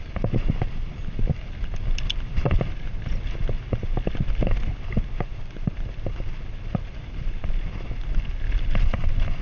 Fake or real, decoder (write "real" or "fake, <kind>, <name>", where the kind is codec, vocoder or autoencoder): real